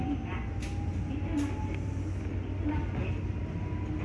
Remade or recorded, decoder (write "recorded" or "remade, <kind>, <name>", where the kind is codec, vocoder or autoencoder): recorded